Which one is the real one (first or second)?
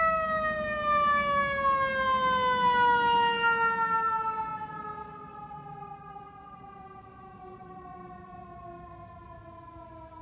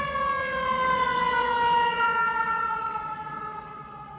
first